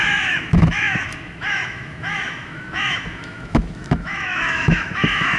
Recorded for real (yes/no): no